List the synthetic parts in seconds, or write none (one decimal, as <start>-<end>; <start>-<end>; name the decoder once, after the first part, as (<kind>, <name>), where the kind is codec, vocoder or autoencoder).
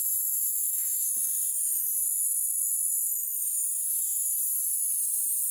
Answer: 0.7-4.0 (autoencoder, DAC-VAE)